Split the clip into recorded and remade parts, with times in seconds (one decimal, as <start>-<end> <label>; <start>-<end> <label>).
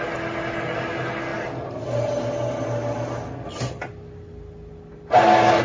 0.0-5.6 recorded